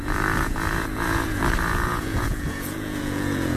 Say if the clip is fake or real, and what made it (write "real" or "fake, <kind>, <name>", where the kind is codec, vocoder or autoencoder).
fake, vocoder, Vocos